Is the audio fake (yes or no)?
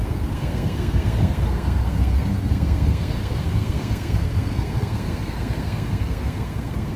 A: yes